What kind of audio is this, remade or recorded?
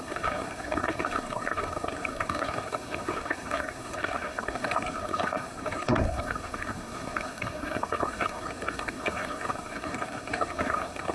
remade